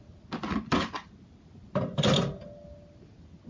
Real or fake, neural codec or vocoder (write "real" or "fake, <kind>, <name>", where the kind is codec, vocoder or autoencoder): real